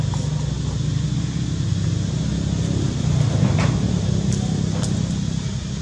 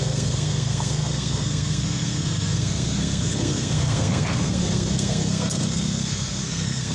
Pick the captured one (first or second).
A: first